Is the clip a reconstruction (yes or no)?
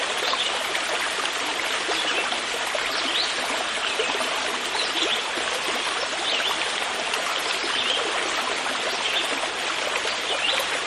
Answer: no